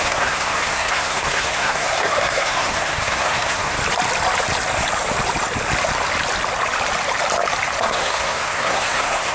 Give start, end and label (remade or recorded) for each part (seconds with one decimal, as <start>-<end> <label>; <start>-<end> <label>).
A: 0.0-3.8 remade; 3.8-7.8 recorded; 7.8-9.3 remade